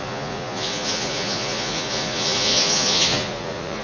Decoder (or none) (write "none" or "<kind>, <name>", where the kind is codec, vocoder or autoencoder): vocoder, Vocos